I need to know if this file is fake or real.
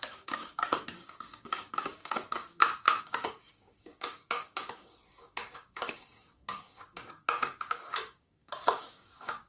fake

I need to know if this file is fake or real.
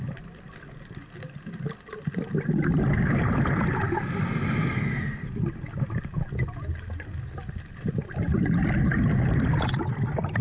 real